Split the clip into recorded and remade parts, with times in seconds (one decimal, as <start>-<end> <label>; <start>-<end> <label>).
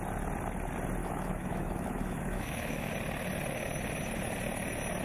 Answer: 0.0-1.0 recorded; 1.0-2.9 remade; 2.9-5.0 recorded